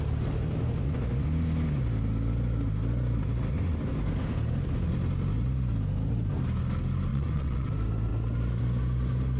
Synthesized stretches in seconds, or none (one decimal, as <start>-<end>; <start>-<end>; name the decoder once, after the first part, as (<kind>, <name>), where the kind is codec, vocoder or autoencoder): 7.1-7.7 (vocoder, WaveNeXt)